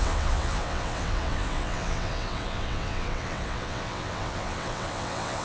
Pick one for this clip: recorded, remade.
remade